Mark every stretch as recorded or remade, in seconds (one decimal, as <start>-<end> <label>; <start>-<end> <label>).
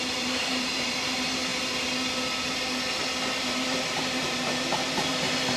0.0-1.5 remade; 1.5-3.4 recorded; 3.4-5.6 remade